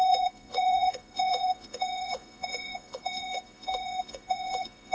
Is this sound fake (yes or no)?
yes